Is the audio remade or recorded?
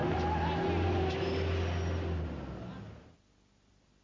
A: recorded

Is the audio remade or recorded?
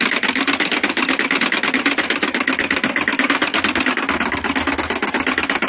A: recorded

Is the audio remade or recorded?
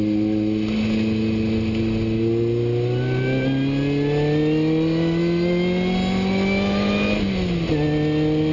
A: recorded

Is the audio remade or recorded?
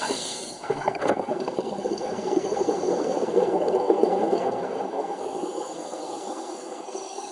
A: remade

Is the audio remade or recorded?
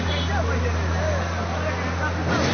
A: recorded